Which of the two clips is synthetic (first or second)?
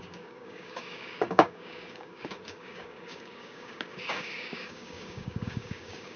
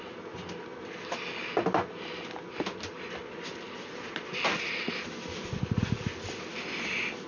first